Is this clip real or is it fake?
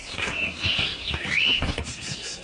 fake